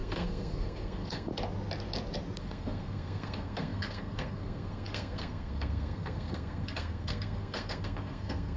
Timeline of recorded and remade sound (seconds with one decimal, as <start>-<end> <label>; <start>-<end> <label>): 0.0-1.3 remade; 1.3-2.4 recorded; 2.4-8.6 remade